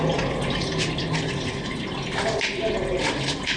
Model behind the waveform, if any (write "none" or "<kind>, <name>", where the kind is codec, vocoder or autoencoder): none